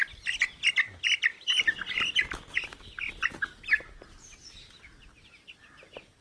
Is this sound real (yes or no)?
yes